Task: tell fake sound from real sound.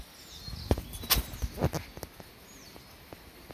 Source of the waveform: real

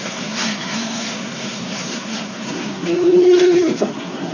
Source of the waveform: fake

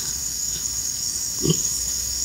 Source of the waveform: fake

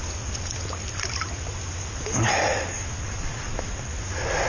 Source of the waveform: real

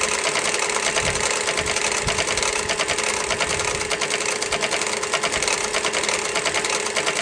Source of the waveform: real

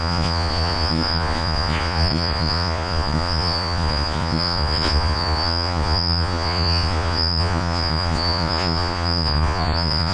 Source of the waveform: fake